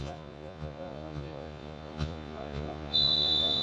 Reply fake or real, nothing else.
fake